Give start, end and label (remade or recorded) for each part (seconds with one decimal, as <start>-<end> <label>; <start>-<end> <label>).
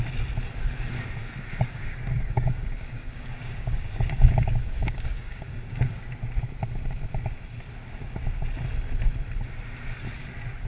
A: 0.0-1.2 recorded; 1.2-6.0 remade; 6.0-10.7 recorded